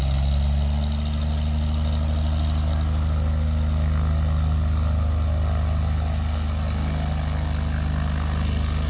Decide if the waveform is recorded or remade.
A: recorded